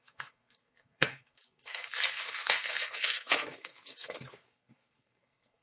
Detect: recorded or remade remade